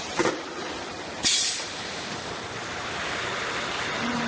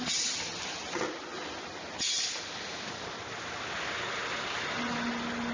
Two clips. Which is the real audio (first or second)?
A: second